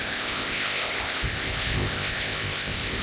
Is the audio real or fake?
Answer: fake